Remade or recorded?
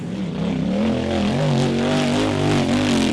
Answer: recorded